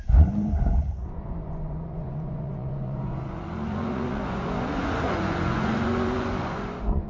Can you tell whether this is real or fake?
fake